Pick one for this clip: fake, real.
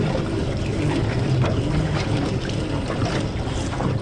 real